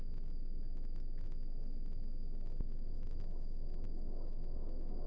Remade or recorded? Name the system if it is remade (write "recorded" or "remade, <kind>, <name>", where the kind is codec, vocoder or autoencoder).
recorded